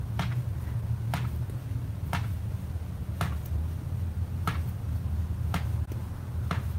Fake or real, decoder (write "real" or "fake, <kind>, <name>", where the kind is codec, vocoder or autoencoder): real